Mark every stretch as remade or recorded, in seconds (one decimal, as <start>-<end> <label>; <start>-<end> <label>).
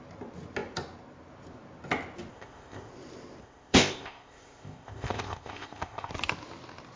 0.0-2.3 recorded; 2.3-2.9 remade; 2.9-3.4 recorded; 3.4-6.1 remade; 6.1-7.0 recorded